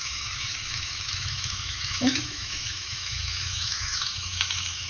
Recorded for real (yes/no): no